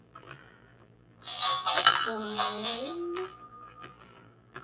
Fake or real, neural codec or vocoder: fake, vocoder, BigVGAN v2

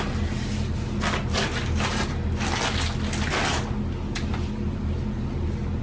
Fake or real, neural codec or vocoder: real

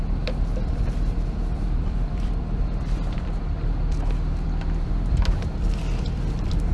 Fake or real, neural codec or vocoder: fake, vocoder, BigVGAN v2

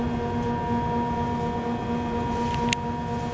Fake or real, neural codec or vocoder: real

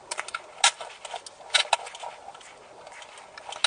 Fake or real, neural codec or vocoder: real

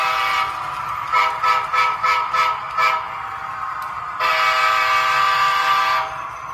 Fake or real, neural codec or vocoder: real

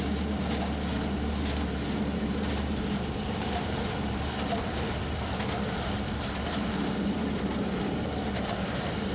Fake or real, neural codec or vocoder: fake, vocoder, BigVGAN v2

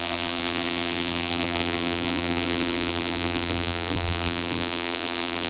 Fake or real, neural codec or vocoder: fake, vocoder, BigVGAN v2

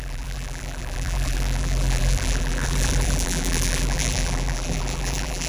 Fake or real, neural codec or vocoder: fake, vocoder, BigVGAN v2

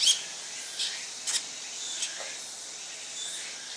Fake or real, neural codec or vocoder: real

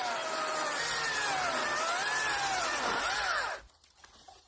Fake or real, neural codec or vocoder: real